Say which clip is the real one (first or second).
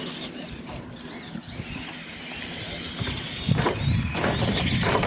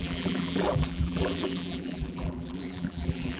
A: first